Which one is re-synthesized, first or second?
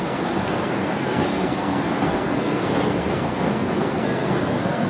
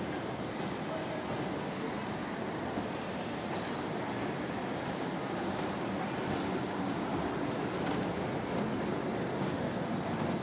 first